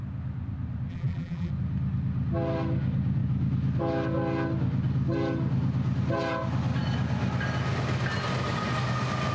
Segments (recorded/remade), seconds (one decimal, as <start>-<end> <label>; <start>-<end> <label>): 0.0-0.9 recorded; 0.9-1.5 remade; 1.5-9.3 recorded